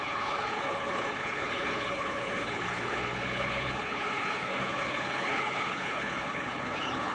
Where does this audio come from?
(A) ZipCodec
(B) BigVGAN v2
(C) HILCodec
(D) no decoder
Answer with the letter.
C